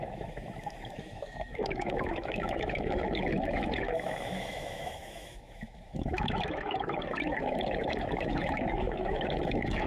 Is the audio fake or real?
fake